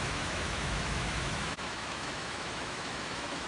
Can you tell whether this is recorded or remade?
remade